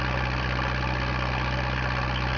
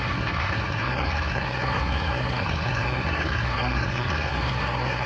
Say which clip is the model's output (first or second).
second